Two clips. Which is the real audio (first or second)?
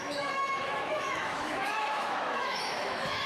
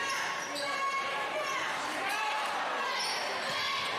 second